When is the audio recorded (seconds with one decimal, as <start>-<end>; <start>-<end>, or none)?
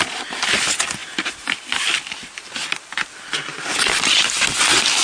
0.0-5.0